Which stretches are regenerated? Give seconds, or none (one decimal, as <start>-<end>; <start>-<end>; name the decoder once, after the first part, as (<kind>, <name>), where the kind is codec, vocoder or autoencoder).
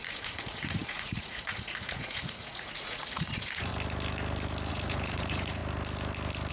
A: 0.0-3.7 (vocoder, Vocos); 4.7-5.6